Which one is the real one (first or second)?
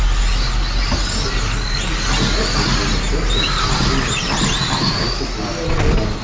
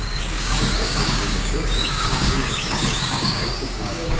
first